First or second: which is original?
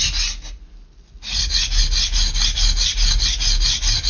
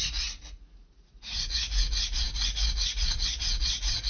first